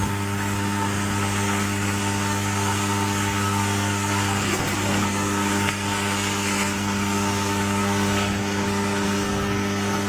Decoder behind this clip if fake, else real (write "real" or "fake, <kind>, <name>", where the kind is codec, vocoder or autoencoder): fake, codec, SNAC